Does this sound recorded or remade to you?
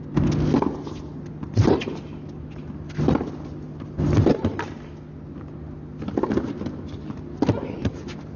recorded